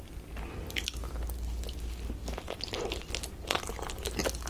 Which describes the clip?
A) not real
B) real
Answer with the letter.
B